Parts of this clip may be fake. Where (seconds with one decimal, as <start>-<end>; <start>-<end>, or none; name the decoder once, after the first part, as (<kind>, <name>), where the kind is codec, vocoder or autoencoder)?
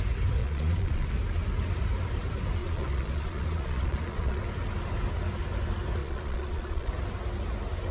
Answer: 0.4-1.1 (vocoder, Vocos); 2.6-4.4; 6.0-6.9